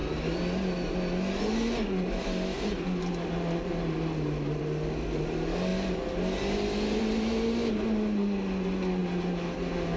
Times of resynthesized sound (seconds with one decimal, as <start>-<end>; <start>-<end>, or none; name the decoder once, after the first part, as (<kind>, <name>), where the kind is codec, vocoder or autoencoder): none